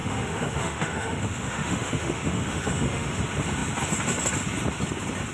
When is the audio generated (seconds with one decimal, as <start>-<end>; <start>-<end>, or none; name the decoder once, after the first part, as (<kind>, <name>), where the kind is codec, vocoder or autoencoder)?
0.0-3.2 (autoencoder, DAC-VAE)